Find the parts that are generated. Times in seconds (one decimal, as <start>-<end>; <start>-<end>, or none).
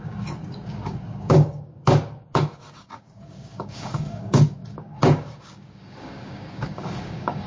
0.0-7.5